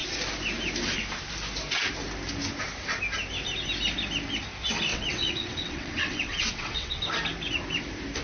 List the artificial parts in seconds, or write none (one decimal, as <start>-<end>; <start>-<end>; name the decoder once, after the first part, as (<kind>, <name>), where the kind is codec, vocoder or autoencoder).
4.9-7.0 (vocoder, WaveNeXt)

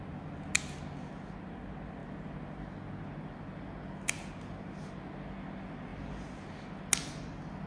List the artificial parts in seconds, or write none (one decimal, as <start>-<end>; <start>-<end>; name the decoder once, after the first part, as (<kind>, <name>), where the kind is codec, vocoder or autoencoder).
none

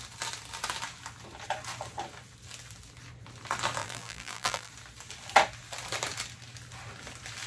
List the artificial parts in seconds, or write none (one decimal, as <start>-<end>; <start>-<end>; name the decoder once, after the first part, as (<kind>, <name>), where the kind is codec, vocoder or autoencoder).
3.8-4.7 (vocoder, BigVGAN v2)

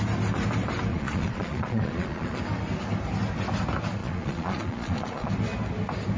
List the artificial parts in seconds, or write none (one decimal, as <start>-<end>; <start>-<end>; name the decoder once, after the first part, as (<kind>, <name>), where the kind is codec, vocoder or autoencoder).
0.9-2.4 (vocoder, Vocos); 4.0-5.3